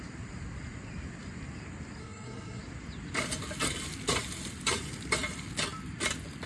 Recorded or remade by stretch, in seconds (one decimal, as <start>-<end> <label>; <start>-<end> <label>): 0.0-2.0 recorded; 2.0-2.6 remade; 2.6-6.5 recorded